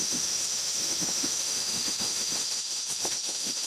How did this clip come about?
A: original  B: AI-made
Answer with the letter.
B